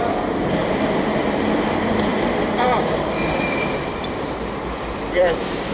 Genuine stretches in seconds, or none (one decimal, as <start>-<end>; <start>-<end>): none

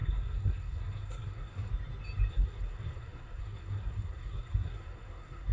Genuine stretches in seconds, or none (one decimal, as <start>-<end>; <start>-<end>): 1.7-2.3

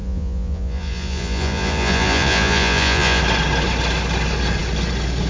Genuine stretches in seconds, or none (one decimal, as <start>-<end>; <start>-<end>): 3.2-5.3

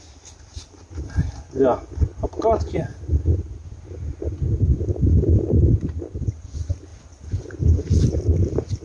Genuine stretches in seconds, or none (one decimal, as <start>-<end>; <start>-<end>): 0.0-8.8